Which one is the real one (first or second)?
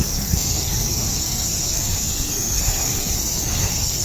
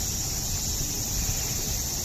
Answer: second